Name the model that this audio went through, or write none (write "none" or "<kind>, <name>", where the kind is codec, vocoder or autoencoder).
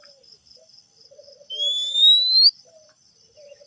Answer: none